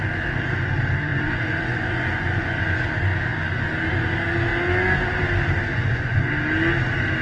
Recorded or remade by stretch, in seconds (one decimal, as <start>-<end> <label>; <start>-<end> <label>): 0.0-1.1 recorded; 1.1-2.6 remade; 2.6-5.7 recorded; 5.7-6.3 remade; 6.3-7.2 recorded